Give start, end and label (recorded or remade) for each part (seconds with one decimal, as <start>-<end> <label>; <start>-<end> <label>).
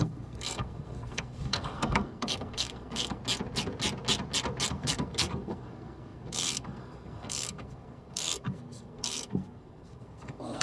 0.0-3.2 remade; 3.2-4.7 recorded; 4.7-10.6 remade